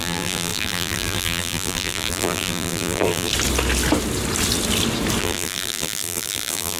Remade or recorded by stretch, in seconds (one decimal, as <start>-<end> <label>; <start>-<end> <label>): 0.0-3.3 remade; 3.3-5.2 recorded; 5.2-6.8 remade